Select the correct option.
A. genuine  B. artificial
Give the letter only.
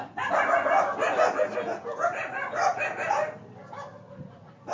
A